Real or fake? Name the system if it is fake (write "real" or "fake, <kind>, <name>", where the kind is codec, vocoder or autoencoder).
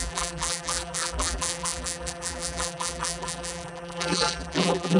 fake, vocoder, BigVGAN v2